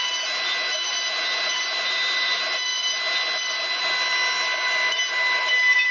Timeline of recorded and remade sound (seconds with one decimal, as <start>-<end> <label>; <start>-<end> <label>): 0.0-2.7 remade; 2.7-4.9 recorded; 4.9-5.9 remade